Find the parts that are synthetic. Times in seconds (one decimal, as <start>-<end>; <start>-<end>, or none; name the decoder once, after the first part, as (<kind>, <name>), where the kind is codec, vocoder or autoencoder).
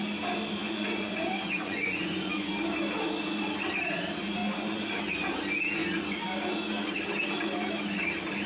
0.6-2.5 (vocoder, Vocos); 4.4-5.0